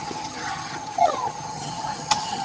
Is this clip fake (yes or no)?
yes